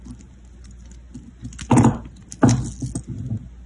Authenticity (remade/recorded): recorded